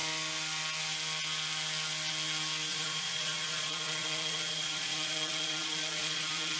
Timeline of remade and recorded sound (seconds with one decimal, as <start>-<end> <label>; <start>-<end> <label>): 0.0-2.7 recorded; 2.7-6.6 remade